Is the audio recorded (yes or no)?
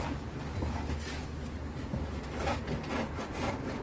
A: yes